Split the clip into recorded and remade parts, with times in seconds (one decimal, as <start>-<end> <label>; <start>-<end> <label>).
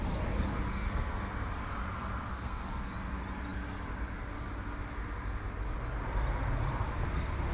0.0-0.7 recorded; 0.7-1.3 remade; 1.3-2.3 recorded; 2.3-2.9 remade; 2.9-7.5 recorded